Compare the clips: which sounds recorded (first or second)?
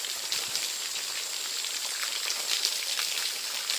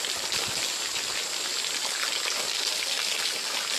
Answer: second